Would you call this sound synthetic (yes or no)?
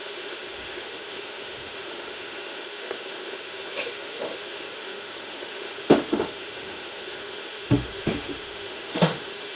yes